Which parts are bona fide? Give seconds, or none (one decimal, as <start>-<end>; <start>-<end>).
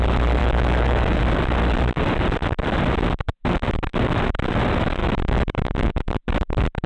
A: 0.0-0.4; 1.2-5.0; 5.9-6.9